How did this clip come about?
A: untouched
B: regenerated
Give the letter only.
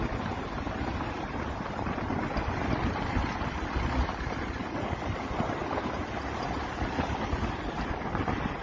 A